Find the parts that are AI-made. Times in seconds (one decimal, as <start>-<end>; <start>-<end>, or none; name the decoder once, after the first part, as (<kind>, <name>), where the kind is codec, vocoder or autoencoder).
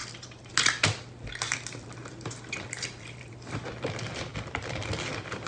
0.0-0.5 (vocoder, BigVGAN v2); 2.1-3.3; 4.3-4.9